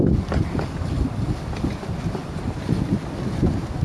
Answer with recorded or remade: recorded